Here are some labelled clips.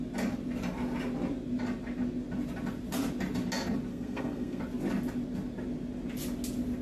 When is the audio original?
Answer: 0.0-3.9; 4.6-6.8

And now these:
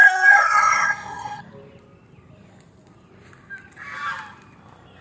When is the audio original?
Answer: 1.4-5.0

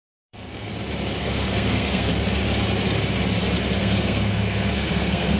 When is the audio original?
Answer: 0.7-1.2; 2.1-3.8